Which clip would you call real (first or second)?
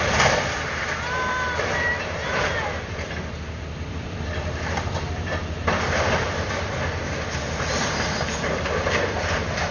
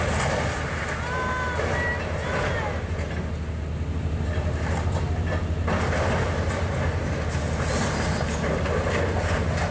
second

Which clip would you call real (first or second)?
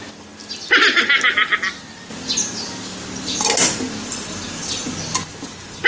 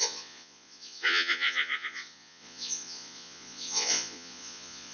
first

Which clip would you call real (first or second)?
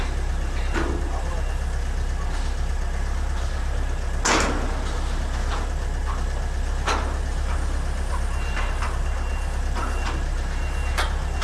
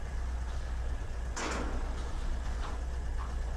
first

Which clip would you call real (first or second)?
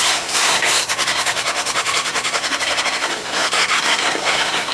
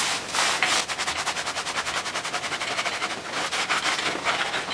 second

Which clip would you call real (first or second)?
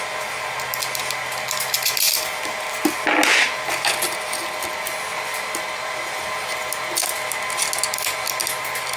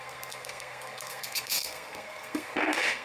first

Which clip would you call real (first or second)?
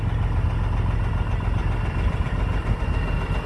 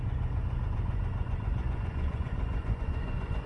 first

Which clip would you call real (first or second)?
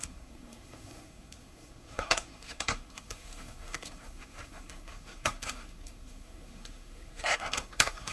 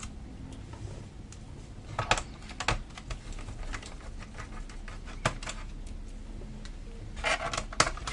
second